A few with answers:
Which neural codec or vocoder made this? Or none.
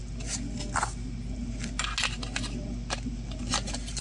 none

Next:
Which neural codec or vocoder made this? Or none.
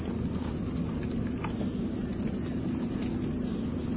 none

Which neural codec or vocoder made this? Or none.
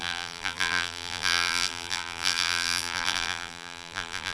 vocoder, BigVGAN v2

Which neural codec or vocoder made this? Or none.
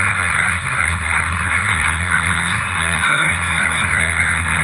codec, SNAC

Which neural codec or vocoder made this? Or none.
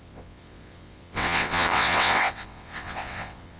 vocoder, WaveNeXt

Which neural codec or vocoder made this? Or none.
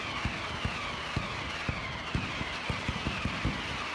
none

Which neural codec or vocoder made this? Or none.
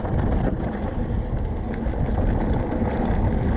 none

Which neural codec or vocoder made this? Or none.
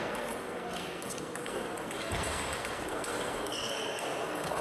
codec, SNAC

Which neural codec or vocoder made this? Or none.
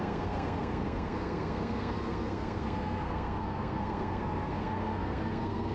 codec, SNAC